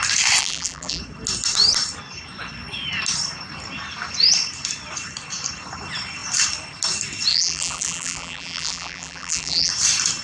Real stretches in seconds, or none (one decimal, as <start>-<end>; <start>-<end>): 0.0-0.4; 1.0-7.3; 9.7-10.2